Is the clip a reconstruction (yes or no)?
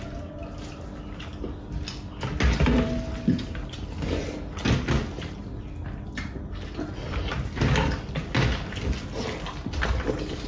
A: no